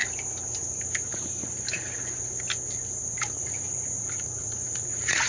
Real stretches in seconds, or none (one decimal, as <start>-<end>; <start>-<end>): 0.0-3.0